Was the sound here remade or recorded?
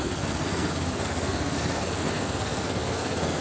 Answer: remade